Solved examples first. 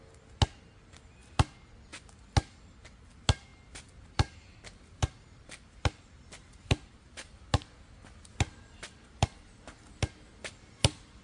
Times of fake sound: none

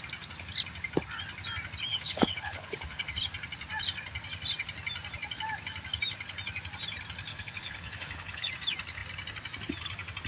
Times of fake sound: 1.9-3.1; 7.3-8.5

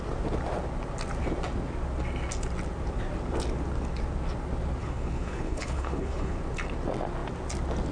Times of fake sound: 4.8-6.4

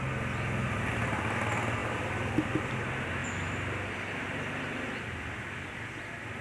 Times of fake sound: none